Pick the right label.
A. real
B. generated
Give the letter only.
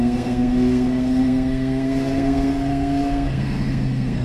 B